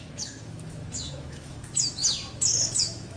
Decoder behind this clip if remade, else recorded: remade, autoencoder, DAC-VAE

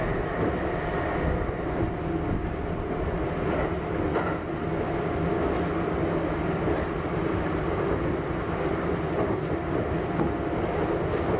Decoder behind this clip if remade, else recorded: recorded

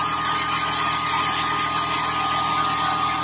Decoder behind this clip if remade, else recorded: recorded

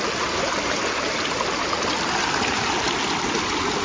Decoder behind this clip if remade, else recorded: recorded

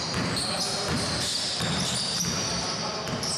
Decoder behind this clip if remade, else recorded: recorded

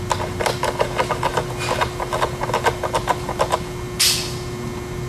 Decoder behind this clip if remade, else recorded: recorded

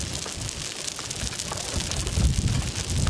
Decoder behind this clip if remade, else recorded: recorded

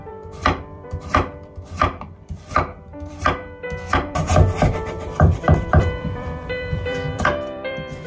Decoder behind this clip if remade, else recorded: remade, vocoder, BigVGAN v2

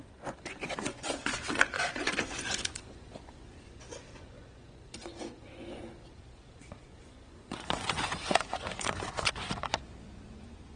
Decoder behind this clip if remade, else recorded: remade, vocoder, Vocos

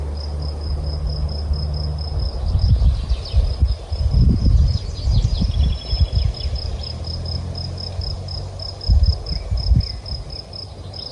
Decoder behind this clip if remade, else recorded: recorded